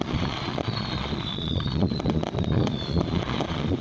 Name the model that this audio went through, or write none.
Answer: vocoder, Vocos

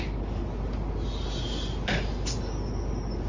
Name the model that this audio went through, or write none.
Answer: none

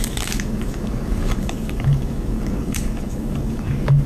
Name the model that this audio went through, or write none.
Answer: codec, DAC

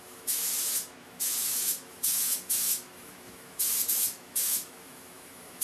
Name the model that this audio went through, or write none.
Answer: autoencoder, DAC-VAE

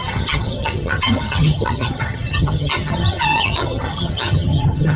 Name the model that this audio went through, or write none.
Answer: vocoder, HiFi-GAN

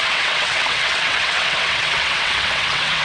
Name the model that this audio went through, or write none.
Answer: vocoder, WaveNeXt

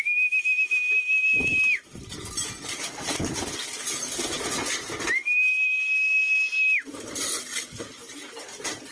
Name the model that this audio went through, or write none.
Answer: none